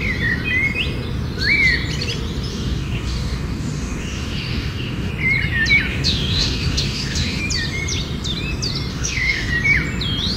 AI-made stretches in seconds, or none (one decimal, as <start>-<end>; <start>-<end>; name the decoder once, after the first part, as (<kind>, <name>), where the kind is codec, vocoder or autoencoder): 2.5-5.1 (codec, DAC); 5.9-7.4; 8.9-9.5